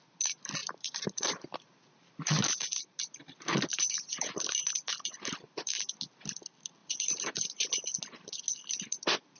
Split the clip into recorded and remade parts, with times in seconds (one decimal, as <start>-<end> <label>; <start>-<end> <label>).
0.0-0.6 recorded; 0.6-3.0 remade; 3.0-3.7 recorded; 3.7-4.7 remade; 4.7-6.8 recorded; 6.8-7.6 remade; 7.6-9.4 recorded